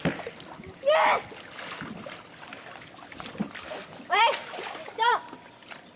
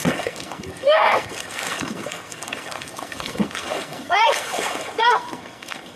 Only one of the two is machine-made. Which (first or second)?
second